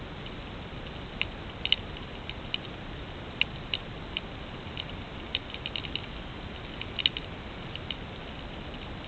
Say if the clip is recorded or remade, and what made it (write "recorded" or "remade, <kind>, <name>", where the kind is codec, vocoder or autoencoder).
recorded